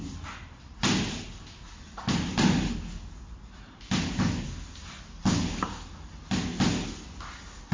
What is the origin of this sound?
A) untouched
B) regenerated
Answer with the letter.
A